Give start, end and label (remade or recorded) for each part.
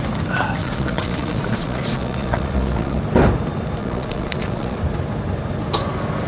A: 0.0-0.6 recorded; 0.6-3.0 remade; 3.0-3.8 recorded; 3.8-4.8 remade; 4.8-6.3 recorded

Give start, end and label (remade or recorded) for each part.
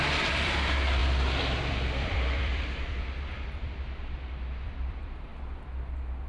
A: 0.0-5.3 remade; 5.3-6.3 recorded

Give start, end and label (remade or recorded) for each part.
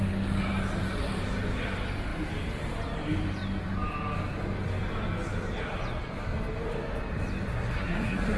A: 0.0-7.5 recorded; 7.5-8.4 remade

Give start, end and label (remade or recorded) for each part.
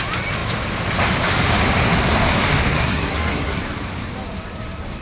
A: 0.0-2.7 recorded; 2.7-3.6 remade; 3.6-5.0 recorded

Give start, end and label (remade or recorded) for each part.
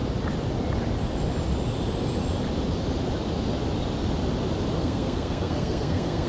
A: 0.0-4.8 recorded; 4.8-6.3 remade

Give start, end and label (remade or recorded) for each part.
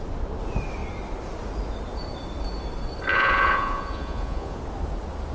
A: 0.0-3.1 recorded; 3.1-4.6 remade; 4.6-5.3 recorded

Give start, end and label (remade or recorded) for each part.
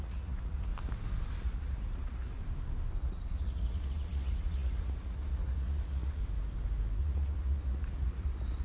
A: 0.0-0.7 remade; 0.7-1.4 recorded; 1.4-2.4 remade; 2.4-3.0 recorded; 3.0-6.2 remade; 6.2-7.0 recorded; 7.0-8.6 remade